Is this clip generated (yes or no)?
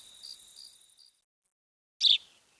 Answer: no